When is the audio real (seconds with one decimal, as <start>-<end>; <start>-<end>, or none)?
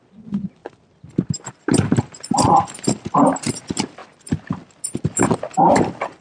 0.0-6.2